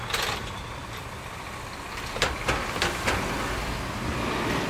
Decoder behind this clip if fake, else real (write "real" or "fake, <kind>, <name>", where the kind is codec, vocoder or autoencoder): real